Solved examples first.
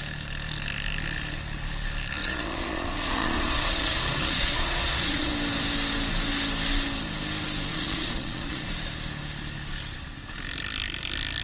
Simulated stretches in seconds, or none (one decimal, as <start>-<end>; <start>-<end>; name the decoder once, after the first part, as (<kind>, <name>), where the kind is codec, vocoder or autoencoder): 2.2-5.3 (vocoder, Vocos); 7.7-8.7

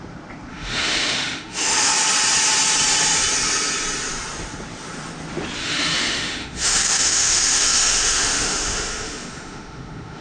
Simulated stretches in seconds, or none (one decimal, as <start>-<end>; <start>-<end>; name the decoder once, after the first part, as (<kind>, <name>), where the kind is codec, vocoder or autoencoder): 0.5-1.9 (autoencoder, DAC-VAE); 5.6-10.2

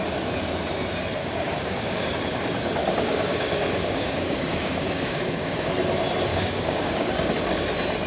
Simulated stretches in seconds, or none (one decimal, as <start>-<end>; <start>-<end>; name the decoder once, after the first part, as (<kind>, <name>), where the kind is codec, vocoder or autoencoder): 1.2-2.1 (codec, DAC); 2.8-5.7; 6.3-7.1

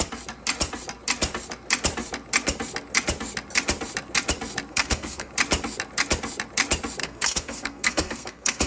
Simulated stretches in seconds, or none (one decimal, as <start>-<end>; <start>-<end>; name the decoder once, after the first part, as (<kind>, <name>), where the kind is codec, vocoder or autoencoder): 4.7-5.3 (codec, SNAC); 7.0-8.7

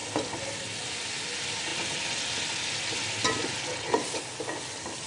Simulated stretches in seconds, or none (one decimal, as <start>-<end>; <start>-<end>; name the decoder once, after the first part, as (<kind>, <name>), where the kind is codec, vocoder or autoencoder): none

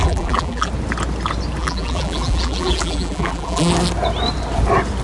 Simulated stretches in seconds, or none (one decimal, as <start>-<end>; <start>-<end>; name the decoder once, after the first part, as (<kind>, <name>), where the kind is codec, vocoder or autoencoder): 0.0-0.7 (vocoder, BigVGAN v2); 1.6-3.7

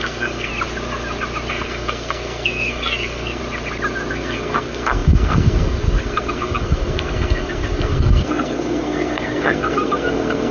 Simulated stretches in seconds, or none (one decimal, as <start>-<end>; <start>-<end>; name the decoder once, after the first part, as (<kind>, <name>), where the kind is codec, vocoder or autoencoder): 0.0-0.5 (codec, SNAC); 1.5-3.4; 4.1-10.5

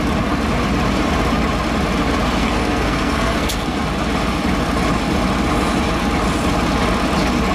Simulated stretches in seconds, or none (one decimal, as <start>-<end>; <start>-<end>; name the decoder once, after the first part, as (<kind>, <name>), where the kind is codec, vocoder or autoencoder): 2.4-3.8 (codec, SNAC)